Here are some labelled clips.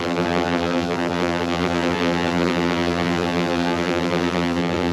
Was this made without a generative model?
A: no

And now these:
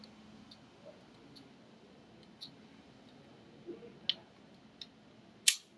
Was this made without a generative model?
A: yes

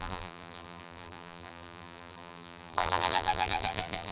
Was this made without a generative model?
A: no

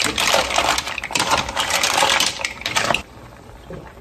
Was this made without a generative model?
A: no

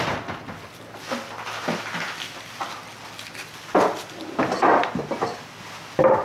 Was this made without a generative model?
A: yes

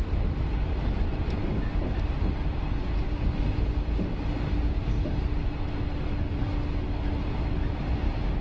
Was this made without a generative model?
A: yes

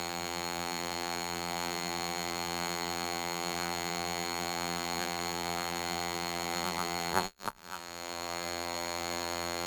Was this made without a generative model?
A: no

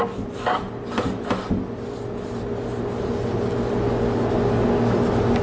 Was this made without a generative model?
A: yes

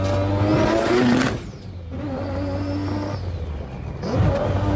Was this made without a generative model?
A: yes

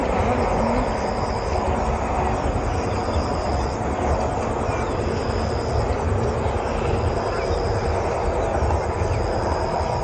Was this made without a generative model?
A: yes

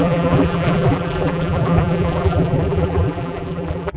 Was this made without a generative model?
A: no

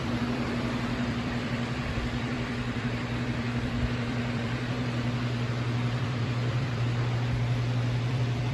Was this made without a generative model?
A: no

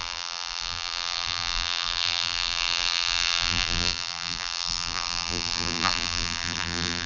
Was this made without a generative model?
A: no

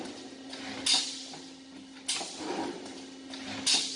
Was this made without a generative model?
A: yes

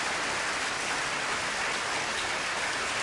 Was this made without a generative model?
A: yes